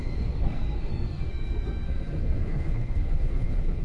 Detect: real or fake fake